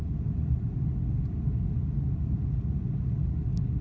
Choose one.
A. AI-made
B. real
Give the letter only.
B